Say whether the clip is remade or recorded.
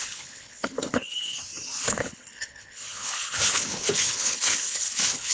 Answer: remade